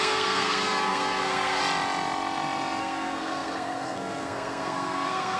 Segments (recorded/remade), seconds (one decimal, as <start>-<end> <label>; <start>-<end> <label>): 0.0-1.6 remade; 1.6-2.8 recorded; 2.8-5.4 remade